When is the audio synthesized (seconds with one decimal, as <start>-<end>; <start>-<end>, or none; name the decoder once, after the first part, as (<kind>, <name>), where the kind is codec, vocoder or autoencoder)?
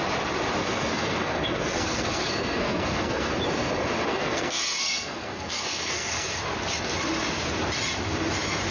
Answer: 0.6-3.3 (codec, SNAC); 4.1-6.4